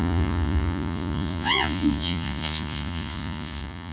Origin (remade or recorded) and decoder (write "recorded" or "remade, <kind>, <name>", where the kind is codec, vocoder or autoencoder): remade, vocoder, Vocos